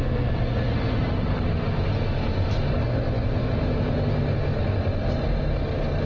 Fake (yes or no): no